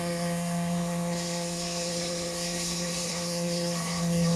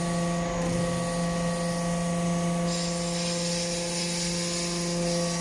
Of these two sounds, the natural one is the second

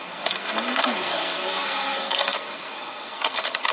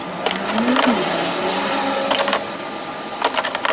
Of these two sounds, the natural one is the second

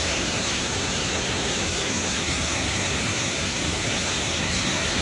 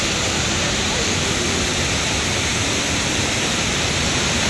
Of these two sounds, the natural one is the second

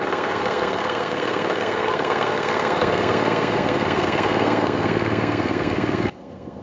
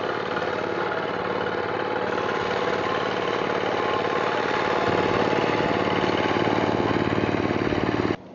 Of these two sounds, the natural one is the second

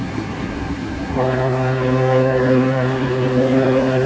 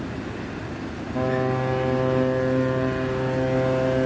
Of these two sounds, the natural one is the second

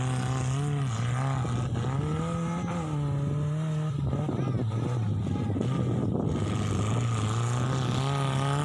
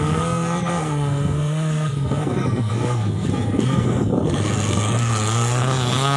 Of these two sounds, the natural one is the first